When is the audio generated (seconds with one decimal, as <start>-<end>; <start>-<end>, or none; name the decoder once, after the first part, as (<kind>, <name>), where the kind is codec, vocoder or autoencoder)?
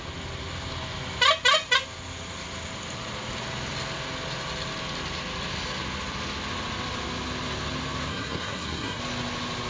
8.1-9.0 (codec, SNAC)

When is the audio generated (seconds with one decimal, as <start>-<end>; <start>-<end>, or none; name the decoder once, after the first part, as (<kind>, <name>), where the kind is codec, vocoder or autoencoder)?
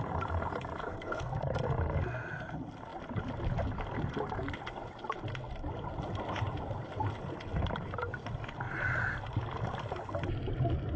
0.8-1.4 (codec, SNAC)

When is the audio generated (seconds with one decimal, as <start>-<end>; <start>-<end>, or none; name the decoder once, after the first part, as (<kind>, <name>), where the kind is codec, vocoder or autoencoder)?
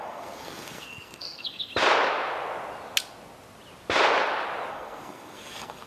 0.0-1.7 (codec, SNAC); 4.7-5.9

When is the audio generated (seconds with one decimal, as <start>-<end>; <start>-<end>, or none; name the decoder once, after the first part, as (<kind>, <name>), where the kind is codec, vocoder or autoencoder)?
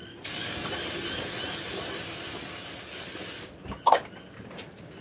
none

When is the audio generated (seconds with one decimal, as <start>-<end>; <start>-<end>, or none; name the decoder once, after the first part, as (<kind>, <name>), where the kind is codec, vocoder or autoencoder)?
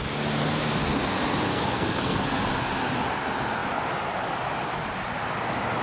1.5-2.4 (codec, SNAC)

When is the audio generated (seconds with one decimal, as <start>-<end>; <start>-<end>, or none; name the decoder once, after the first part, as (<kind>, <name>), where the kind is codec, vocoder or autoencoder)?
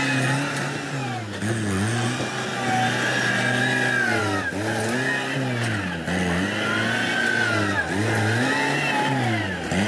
none